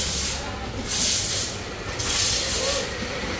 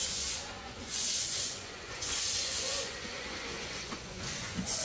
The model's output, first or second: second